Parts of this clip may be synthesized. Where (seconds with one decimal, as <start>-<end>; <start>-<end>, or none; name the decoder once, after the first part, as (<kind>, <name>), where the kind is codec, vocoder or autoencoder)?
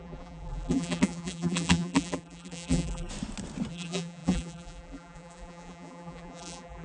0.0-3.1 (vocoder, BigVGAN v2); 3.7-6.8